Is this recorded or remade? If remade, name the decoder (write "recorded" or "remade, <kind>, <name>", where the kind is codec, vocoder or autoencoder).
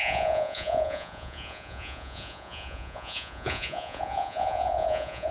remade, vocoder, Vocos